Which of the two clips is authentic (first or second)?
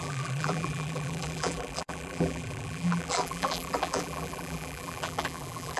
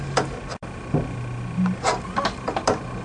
second